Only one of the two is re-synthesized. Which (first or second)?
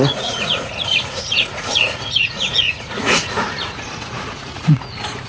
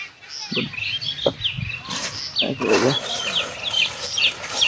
first